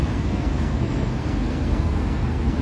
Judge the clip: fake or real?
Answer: fake